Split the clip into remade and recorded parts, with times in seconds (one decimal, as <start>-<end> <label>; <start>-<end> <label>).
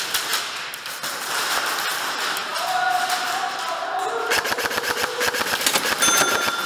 0.0-6.7 recorded